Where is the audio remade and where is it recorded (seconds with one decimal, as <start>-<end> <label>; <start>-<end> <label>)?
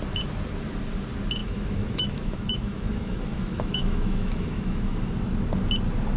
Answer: 0.0-1.4 recorded; 1.4-5.1 remade; 5.1-6.2 recorded